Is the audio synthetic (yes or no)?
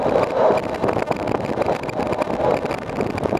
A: no